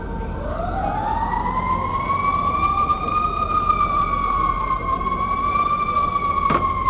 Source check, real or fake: real